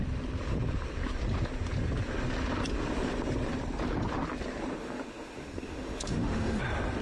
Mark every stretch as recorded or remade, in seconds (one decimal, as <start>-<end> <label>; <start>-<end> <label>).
0.0-4.8 recorded; 4.8-6.6 remade; 6.6-7.0 recorded